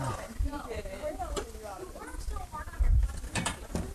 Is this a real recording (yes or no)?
no